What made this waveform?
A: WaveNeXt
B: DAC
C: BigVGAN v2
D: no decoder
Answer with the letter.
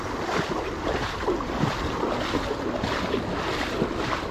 D